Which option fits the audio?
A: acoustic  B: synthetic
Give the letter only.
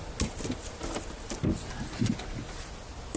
A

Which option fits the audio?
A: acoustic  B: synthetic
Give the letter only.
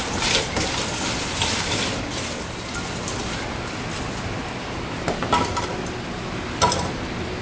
A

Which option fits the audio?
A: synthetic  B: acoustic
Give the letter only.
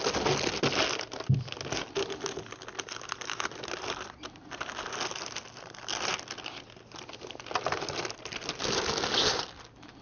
B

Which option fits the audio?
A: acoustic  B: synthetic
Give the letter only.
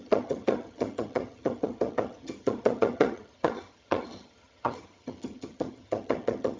B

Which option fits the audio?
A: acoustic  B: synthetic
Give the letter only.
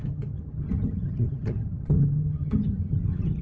B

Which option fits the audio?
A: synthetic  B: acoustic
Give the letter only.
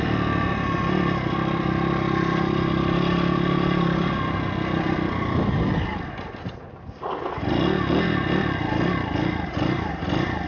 B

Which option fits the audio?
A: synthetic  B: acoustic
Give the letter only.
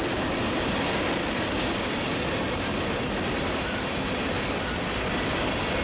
B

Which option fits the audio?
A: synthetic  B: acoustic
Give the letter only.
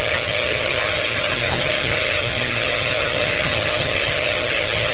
A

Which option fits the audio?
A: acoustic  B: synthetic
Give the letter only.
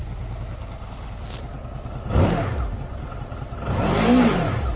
A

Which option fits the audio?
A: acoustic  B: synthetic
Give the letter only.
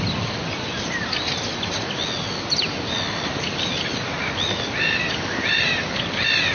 A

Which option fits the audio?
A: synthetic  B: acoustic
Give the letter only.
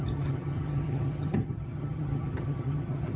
A